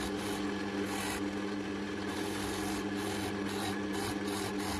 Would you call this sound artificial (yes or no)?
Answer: no